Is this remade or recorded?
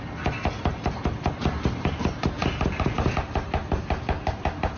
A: recorded